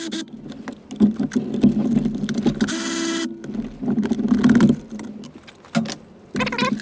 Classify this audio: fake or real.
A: real